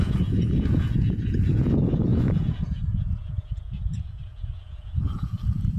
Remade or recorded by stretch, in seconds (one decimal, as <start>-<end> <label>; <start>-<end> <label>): 0.0-5.8 remade